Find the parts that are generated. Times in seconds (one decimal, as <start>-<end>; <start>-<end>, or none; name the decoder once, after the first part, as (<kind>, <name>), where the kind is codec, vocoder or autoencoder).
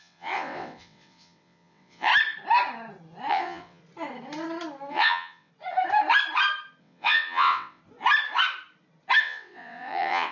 0.0-2.1 (vocoder, WaveNeXt); 3.3-3.8; 4.9-5.5; 6.8-7.8; 9.2-10.3